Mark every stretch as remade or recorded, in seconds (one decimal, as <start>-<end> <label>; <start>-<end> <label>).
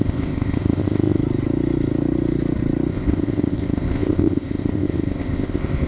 0.0-1.2 remade; 1.2-2.9 recorded; 2.9-5.9 remade